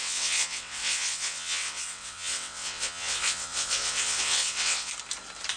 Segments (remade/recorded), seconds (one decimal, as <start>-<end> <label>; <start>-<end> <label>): 0.0-4.9 remade; 4.9-5.6 recorded